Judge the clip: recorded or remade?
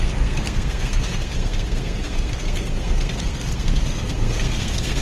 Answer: remade